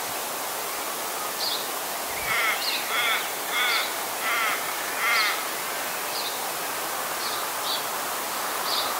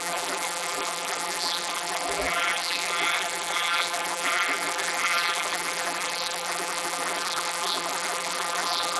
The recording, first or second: first